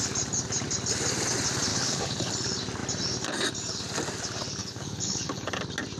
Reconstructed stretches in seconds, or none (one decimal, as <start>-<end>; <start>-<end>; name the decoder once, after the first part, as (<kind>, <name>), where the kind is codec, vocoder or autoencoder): 1.7-2.3 (codec, HILCodec); 4.6-5.6